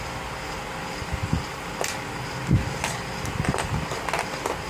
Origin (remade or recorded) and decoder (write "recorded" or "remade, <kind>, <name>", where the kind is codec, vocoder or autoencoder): recorded